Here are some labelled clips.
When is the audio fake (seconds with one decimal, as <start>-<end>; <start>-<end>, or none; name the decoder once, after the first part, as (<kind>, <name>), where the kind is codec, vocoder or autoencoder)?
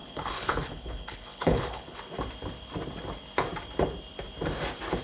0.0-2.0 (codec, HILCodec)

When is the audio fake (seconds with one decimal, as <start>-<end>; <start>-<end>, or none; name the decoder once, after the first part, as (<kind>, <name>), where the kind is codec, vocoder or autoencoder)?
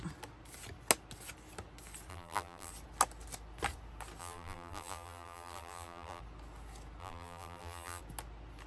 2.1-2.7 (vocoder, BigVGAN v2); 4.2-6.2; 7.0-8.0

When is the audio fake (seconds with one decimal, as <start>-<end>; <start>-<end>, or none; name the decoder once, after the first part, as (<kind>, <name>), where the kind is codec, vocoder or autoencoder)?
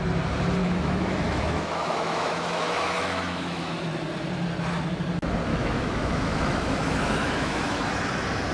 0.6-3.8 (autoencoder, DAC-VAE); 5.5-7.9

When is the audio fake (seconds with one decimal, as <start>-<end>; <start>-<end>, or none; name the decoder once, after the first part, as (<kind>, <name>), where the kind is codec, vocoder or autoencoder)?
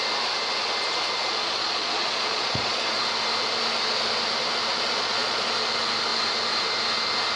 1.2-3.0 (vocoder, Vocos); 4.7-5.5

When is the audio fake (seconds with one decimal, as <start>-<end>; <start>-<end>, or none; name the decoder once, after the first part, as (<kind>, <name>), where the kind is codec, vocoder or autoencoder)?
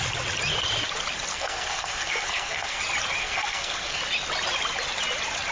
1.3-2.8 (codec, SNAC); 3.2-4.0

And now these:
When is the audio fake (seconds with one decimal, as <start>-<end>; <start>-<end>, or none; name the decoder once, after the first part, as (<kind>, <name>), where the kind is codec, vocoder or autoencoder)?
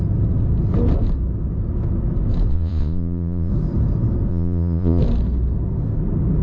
2.5-3.5 (vocoder, Vocos); 4.3-5.0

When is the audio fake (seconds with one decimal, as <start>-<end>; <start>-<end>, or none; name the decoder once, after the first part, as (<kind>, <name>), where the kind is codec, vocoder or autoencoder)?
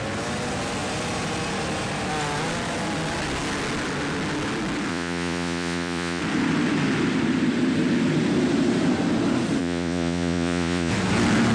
4.9-6.2 (vocoder, Vocos); 9.6-10.9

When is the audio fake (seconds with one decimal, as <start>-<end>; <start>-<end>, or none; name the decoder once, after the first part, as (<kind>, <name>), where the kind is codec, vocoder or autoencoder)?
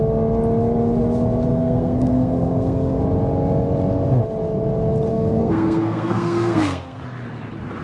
1.5-3.0 (codec, SNAC); 5.1-7.0